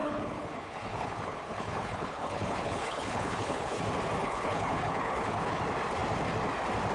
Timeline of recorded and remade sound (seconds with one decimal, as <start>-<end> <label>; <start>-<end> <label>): 0.0-3.8 remade; 3.8-4.2 recorded; 4.2-5.6 remade; 5.6-6.9 recorded